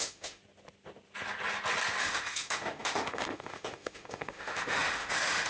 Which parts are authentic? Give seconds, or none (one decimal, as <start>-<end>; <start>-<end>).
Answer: 0.4-2.0